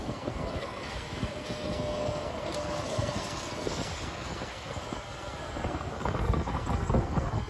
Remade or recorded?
remade